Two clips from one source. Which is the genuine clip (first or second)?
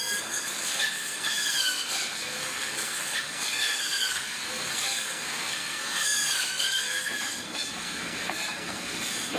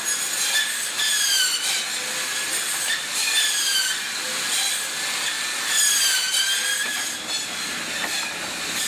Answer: second